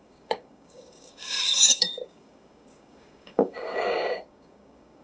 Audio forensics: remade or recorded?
remade